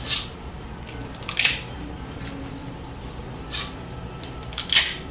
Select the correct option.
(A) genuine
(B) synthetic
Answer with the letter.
B